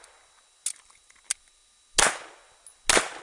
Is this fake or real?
real